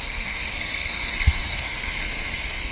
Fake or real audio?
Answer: fake